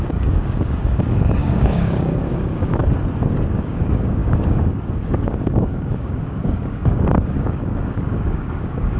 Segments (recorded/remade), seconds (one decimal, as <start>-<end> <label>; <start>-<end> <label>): 0.0-2.8 remade; 2.8-3.5 recorded; 3.5-9.0 remade